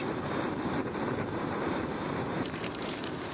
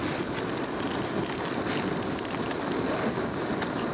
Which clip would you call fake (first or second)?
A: first